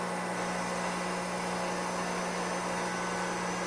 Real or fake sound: real